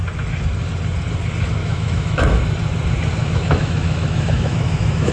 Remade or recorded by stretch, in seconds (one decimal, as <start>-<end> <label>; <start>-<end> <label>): 0.0-1.6 recorded; 1.6-2.4 remade; 2.4-3.2 recorded; 3.2-5.1 remade